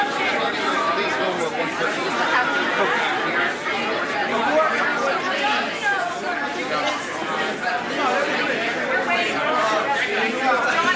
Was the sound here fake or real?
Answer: real